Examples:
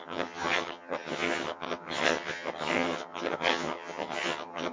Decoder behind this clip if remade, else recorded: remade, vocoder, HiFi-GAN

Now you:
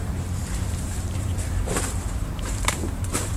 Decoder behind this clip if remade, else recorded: remade, vocoder, BigVGAN v2